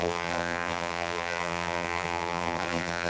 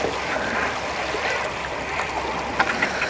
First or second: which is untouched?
second